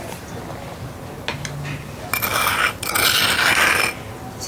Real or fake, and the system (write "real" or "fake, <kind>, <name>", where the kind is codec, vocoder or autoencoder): real